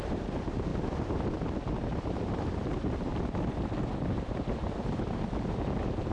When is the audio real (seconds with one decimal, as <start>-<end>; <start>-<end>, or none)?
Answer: 0.7-1.3; 3.1-4.1